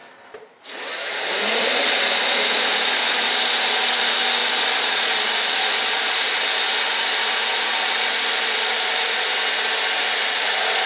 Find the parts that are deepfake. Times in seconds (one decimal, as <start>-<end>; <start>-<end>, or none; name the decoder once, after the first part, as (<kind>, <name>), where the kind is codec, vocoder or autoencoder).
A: 0.0-3.5 (vocoder, BigVGAN v2); 4.4-4.9; 7.7-9.4